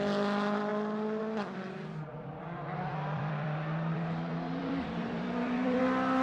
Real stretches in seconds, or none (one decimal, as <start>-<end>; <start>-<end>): 0.0-2.1; 5.8-6.2